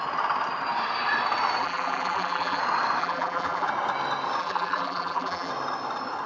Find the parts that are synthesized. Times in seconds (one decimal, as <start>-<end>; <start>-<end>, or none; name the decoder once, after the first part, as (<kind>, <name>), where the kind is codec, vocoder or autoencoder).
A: 1.6-2.6 (vocoder, BigVGAN v2); 3.0-3.7; 4.4-5.5